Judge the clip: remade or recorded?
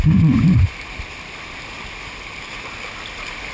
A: recorded